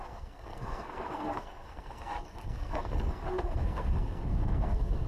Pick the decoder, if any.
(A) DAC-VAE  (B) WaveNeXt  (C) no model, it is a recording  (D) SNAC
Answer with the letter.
D